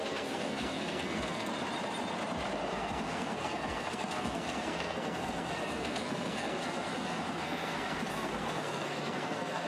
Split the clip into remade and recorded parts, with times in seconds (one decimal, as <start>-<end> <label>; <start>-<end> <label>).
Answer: 0.0-1.5 remade; 1.5-2.7 recorded; 2.7-9.7 remade